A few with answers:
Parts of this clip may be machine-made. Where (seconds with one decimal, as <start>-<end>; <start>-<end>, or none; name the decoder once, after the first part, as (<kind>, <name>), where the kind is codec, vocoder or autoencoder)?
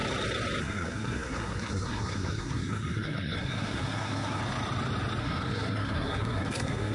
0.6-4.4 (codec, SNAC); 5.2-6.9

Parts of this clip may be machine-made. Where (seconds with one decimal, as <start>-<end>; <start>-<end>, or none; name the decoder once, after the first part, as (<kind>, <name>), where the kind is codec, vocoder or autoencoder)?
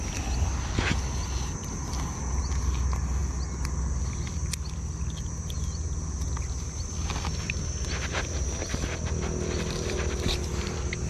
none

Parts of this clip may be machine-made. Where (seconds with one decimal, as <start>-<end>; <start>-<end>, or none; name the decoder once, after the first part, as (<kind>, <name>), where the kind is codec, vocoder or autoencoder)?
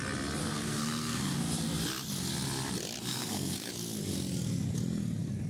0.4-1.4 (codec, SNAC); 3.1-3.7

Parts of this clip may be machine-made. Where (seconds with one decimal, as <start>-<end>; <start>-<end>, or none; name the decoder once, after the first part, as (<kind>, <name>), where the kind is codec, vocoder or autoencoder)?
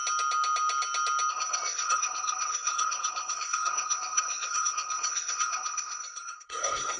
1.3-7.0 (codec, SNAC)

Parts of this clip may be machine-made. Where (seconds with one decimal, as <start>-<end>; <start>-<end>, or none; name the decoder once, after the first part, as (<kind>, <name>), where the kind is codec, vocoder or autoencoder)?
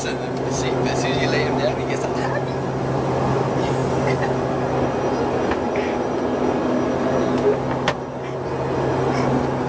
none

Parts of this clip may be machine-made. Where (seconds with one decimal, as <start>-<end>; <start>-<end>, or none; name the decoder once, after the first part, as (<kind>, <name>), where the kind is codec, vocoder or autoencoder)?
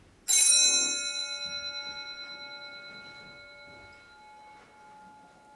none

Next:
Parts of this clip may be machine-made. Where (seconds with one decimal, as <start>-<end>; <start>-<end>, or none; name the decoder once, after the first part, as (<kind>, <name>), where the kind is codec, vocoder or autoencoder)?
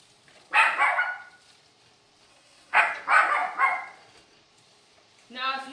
2.3-2.8 (codec, SNAC)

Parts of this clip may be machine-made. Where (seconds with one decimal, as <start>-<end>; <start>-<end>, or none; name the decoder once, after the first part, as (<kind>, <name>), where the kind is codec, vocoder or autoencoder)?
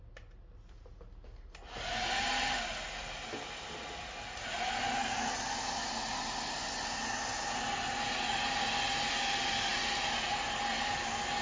none